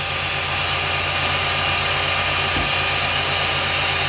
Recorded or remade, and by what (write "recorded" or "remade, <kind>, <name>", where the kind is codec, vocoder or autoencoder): recorded